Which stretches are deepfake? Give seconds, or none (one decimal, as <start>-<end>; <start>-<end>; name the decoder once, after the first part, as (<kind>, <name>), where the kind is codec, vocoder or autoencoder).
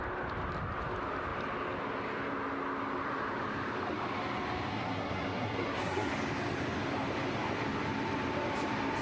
4.7-6.1 (codec, SNAC)